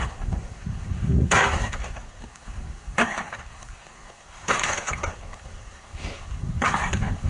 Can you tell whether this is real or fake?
fake